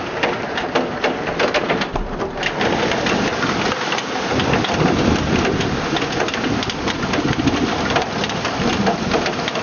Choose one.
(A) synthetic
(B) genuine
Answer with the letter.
B